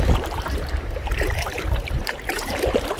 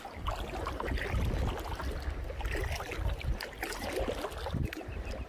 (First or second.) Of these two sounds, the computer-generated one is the first